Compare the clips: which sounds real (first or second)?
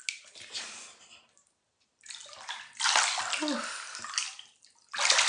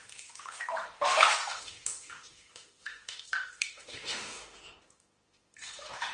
first